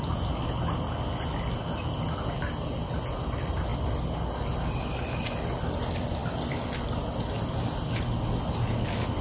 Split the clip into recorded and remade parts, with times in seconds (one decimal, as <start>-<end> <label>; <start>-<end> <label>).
0.0-9.2 recorded